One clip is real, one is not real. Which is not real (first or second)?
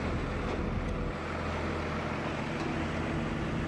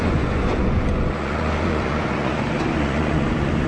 second